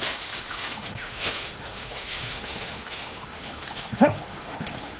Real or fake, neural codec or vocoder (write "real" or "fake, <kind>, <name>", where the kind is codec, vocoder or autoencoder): fake, autoencoder, DAC-VAE